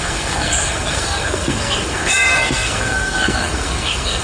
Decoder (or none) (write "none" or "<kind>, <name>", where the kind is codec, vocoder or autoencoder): codec, SNAC